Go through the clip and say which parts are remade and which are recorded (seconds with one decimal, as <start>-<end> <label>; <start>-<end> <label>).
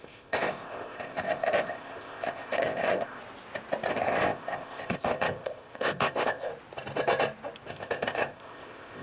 0.0-3.2 remade; 3.2-3.9 recorded; 3.9-6.5 remade; 6.5-7.7 recorded; 7.7-9.0 remade